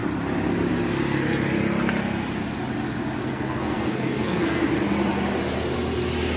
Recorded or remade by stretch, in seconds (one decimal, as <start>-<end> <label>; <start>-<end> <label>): 0.0-3.2 recorded; 3.2-4.6 remade; 4.6-6.4 recorded